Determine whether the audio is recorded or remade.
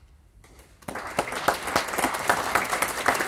recorded